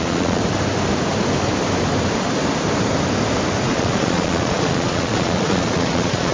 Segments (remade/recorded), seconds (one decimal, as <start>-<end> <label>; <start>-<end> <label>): 0.0-0.4 remade; 0.4-3.7 recorded; 3.7-6.3 remade